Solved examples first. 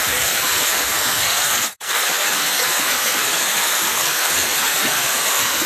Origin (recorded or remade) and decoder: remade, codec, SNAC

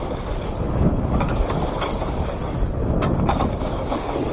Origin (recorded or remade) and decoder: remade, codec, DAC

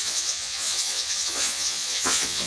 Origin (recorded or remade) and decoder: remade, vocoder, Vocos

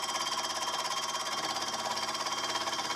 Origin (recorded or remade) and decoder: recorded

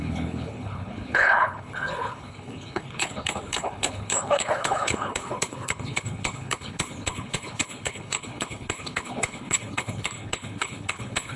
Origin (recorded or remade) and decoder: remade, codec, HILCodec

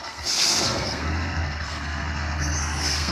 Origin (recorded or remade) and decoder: remade, codec, SNAC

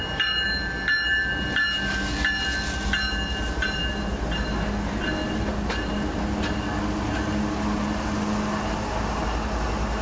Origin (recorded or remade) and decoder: recorded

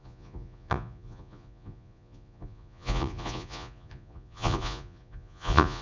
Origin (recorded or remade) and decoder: remade, vocoder, Vocos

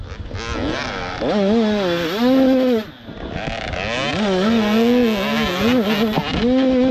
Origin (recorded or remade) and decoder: recorded